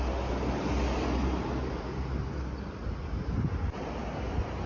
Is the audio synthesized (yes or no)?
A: no